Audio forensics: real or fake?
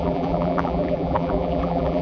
fake